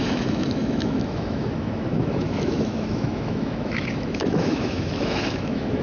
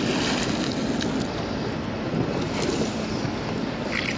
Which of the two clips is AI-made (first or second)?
first